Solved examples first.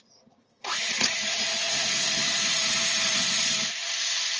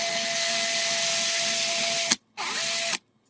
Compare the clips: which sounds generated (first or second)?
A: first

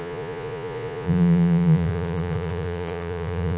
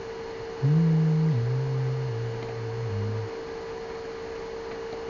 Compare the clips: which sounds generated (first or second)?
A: first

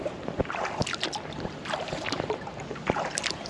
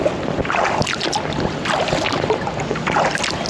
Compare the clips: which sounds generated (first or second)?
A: first